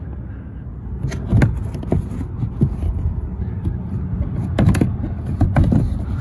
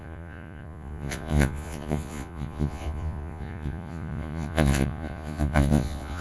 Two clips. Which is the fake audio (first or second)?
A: second